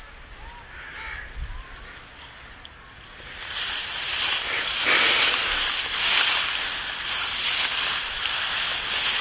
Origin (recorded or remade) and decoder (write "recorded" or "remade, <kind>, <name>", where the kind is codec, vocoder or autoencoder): recorded